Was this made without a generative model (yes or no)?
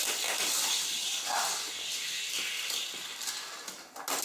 yes